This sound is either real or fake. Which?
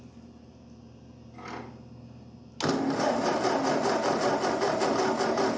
real